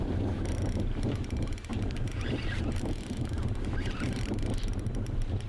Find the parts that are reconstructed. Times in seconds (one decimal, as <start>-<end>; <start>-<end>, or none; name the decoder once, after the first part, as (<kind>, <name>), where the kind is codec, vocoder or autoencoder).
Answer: none